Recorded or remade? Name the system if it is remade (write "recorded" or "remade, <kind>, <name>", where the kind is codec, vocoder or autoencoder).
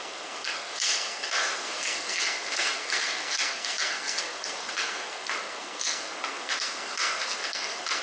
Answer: remade, codec, SNAC